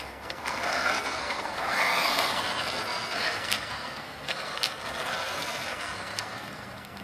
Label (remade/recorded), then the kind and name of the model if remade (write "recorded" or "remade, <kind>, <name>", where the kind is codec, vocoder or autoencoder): remade, codec, SNAC